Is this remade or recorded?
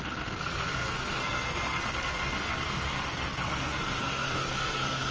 remade